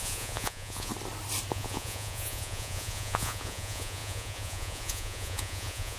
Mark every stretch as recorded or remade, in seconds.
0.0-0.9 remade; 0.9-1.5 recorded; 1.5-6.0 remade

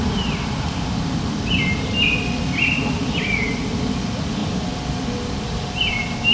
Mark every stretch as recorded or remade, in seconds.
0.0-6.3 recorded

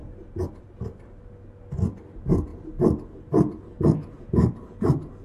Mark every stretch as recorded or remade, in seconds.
0.0-0.6 remade; 0.6-5.2 recorded

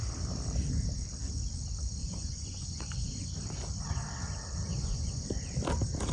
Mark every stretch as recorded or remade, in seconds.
0.0-2.0 recorded; 2.0-3.3 remade; 3.3-4.7 recorded; 4.7-5.3 remade; 5.3-6.1 recorded

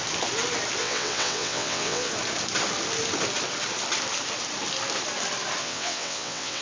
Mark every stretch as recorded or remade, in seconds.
0.0-0.8 recorded; 0.8-2.1 remade; 2.1-5.6 recorded; 5.6-6.6 remade

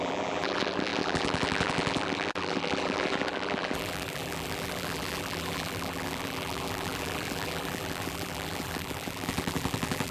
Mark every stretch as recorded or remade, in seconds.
0.0-10.1 remade

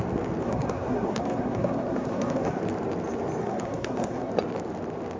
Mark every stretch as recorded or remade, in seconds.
0.0-0.4 recorded; 0.4-2.6 remade; 2.6-3.4 recorded; 3.4-4.3 remade; 4.3-5.2 recorded

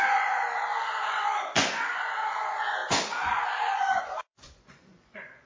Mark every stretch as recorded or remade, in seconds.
0.0-5.5 remade